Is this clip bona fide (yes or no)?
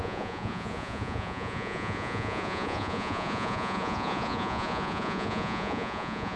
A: no